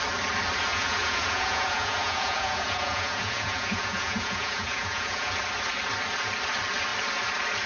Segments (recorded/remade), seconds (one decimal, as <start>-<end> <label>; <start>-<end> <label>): 0.0-0.7 recorded; 0.7-5.3 remade; 5.3-7.7 recorded